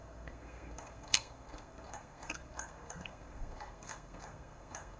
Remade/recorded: remade